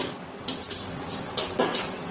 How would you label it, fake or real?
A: fake